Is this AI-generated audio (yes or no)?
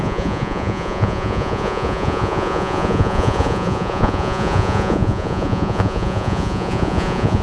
yes